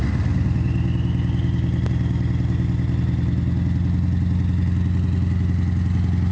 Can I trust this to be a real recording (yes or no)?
yes